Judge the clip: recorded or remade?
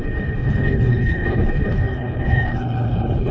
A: remade